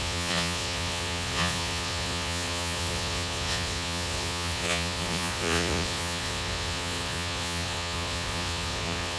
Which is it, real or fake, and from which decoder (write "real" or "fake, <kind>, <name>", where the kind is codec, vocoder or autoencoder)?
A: fake, vocoder, Vocos